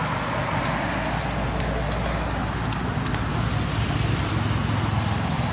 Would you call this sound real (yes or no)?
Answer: yes